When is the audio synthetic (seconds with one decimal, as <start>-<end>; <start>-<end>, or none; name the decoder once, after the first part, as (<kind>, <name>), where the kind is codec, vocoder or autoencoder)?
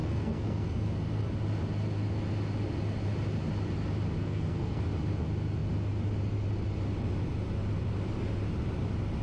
0.0-1.2 (codec, SNAC); 4.2-4.8